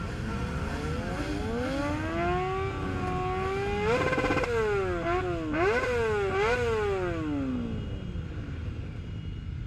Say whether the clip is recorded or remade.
recorded